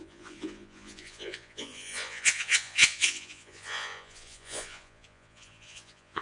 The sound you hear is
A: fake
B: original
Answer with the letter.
A